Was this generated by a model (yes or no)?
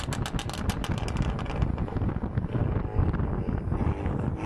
no